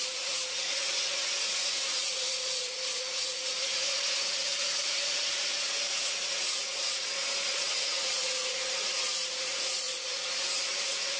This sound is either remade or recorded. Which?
remade